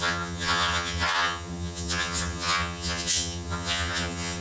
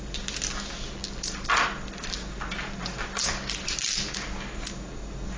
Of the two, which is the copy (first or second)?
first